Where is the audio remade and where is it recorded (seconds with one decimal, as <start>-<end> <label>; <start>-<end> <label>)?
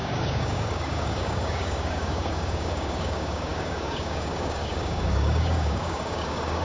0.0-6.6 remade